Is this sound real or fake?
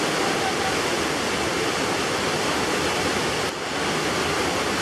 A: real